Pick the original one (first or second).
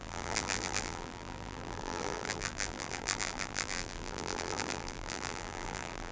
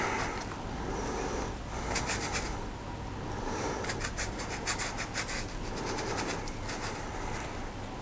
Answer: second